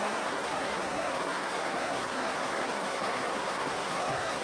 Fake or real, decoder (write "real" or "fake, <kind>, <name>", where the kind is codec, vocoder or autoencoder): fake, codec, SNAC